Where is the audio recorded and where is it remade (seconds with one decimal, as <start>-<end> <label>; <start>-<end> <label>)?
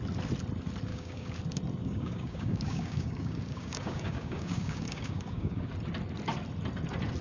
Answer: 0.0-0.9 recorded; 0.9-1.4 remade; 1.4-1.8 recorded; 1.8-5.7 remade; 5.7-7.2 recorded